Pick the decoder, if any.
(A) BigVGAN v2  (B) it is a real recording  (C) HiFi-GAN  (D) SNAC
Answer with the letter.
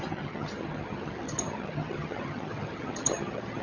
C